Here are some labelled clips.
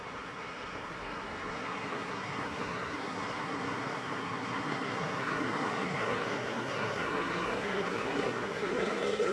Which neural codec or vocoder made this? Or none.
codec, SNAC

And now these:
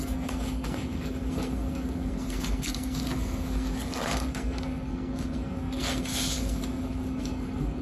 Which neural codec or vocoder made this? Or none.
codec, SNAC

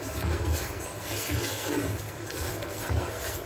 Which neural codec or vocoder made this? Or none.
codec, SNAC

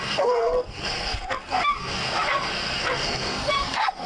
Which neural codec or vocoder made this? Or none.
codec, SNAC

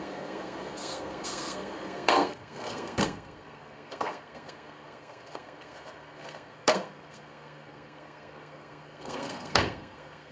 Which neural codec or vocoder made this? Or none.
codec, SNAC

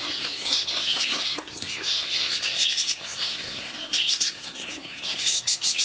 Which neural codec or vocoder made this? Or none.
codec, SNAC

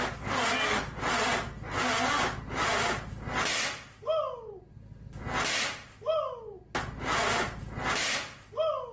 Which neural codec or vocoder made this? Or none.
none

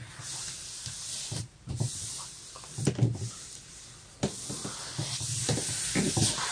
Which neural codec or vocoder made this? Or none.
none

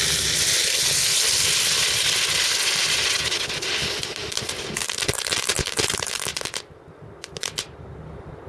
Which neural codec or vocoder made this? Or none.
none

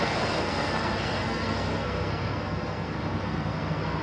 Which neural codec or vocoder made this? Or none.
codec, SNAC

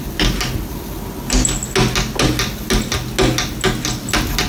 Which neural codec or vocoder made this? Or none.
none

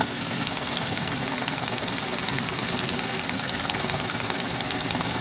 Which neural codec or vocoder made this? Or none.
codec, SNAC